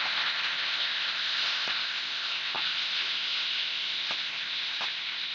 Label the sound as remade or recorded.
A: remade